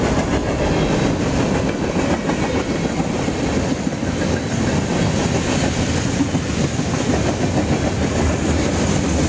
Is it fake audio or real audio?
real